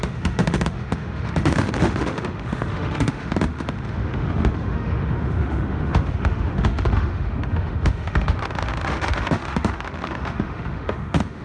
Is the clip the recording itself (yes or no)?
no